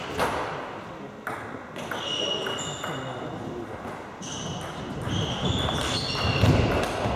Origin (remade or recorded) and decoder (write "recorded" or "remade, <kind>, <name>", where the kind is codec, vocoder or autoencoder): recorded